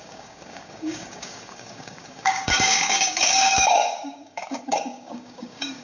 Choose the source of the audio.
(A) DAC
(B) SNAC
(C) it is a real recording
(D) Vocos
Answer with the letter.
A